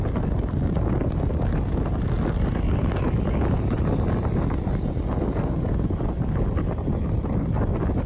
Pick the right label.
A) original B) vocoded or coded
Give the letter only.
A